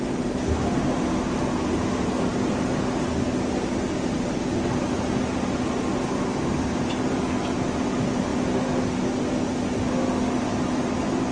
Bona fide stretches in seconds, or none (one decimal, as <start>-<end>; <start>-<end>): 0.0-11.3